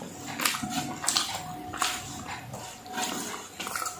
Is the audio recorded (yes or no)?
yes